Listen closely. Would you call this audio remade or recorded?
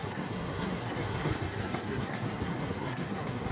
remade